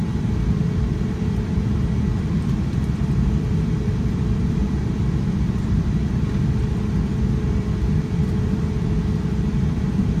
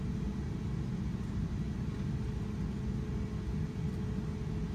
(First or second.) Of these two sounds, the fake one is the first